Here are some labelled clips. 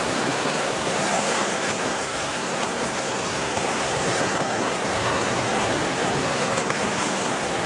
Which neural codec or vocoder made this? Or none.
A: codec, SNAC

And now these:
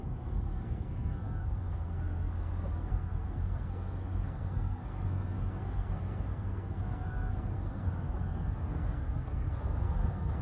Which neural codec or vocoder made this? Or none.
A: codec, SNAC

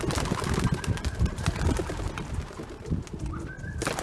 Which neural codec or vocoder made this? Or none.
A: none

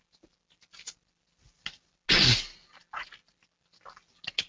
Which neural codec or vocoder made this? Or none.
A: none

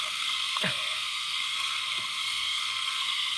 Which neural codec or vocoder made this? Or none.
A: codec, SNAC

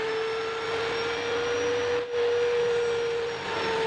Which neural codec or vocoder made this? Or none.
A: none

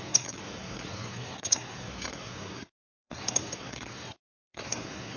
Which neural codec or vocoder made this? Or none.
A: codec, SNAC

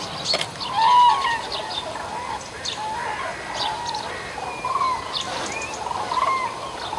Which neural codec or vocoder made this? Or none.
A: none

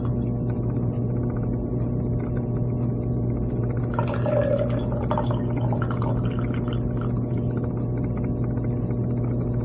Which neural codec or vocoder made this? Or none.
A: none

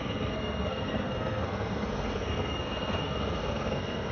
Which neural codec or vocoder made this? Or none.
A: codec, SNAC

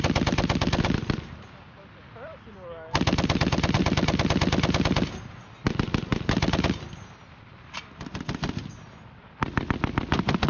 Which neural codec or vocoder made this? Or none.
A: none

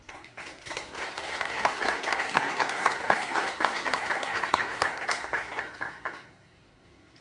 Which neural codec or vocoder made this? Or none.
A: codec, SNAC